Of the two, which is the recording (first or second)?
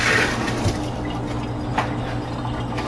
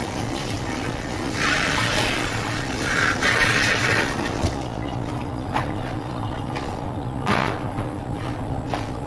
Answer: first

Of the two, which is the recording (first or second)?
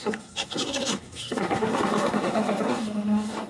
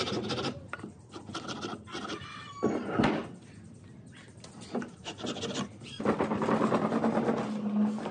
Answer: second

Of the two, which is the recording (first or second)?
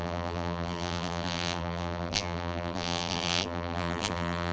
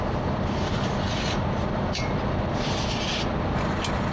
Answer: second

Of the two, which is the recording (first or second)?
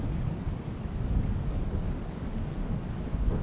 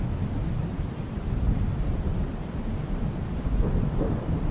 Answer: second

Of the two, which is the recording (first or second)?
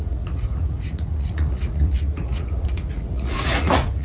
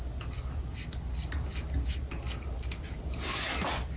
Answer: second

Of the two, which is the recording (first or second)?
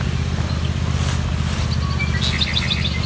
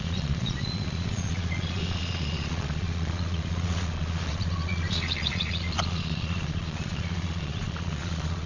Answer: first